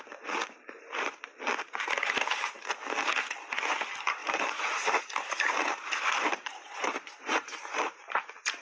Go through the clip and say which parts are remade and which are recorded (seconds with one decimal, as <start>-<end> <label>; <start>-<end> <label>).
0.0-0.4 recorded; 0.4-2.6 remade; 2.6-4.2 recorded; 4.2-8.1 remade; 8.1-8.6 recorded

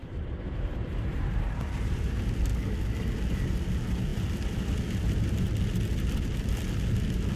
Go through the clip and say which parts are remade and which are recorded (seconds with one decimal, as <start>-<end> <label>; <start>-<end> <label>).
0.0-2.1 remade; 2.1-7.4 recorded

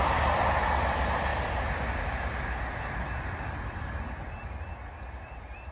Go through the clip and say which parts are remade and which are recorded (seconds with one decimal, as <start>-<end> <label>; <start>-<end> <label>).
0.0-5.7 recorded

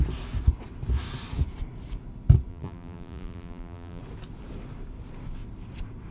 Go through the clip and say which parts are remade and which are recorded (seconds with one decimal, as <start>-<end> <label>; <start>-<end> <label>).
0.0-2.5 recorded; 2.5-4.0 remade; 4.0-6.1 recorded

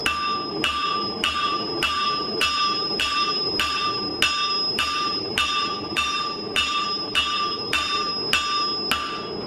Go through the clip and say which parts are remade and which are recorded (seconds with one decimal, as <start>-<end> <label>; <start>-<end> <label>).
0.0-0.5 recorded; 0.5-4.1 remade; 4.1-4.7 recorded; 4.7-8.1 remade; 8.1-9.5 recorded

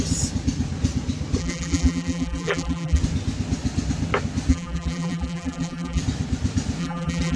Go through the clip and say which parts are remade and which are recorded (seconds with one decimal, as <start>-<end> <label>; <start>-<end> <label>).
0.0-1.4 recorded; 1.4-3.0 remade; 3.0-4.5 recorded; 4.5-6.0 remade; 6.0-6.8 recorded; 6.8-7.4 remade